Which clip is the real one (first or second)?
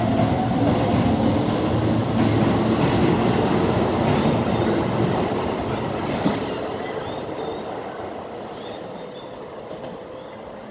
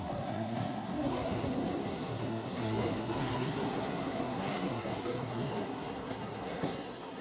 first